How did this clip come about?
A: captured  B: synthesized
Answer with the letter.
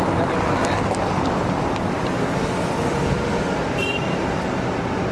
A